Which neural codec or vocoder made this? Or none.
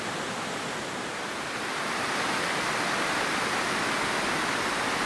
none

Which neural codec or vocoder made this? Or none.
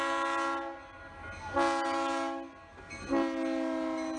none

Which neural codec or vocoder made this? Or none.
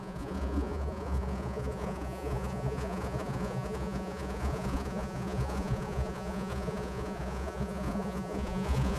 vocoder, Vocos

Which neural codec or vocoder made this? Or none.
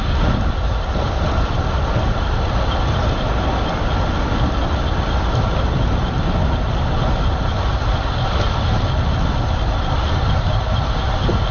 none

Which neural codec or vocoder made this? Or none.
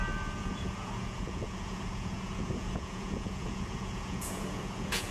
vocoder, Vocos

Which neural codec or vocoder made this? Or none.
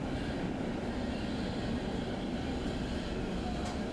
none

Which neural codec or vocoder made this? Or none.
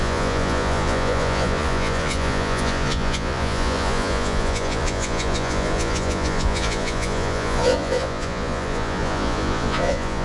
vocoder, Vocos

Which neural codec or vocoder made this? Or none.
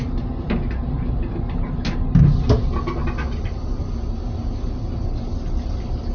none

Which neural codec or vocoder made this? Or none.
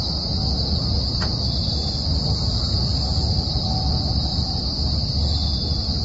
none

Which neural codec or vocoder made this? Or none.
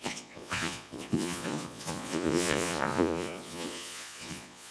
vocoder, Vocos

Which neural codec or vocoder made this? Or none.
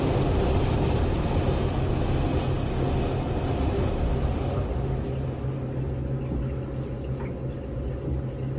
none